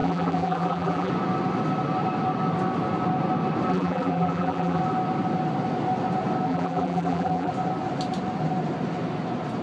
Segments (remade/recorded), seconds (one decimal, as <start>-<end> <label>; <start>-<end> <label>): 0.0-1.1 remade; 1.1-3.7 recorded; 3.7-4.8 remade; 4.8-6.5 recorded; 6.5-7.5 remade; 7.5-9.6 recorded